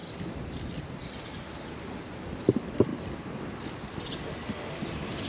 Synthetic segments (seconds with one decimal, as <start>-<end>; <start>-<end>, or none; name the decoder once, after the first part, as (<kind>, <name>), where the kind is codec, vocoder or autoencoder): none